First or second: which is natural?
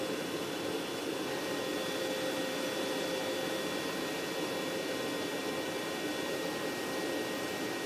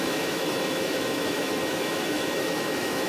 first